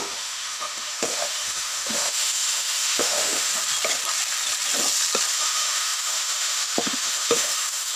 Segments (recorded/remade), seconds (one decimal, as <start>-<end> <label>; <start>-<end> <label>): 0.0-3.5 remade; 3.5-5.3 recorded; 5.3-8.0 remade